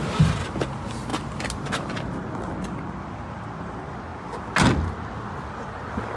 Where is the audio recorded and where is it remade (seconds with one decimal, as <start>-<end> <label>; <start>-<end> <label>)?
0.0-6.2 recorded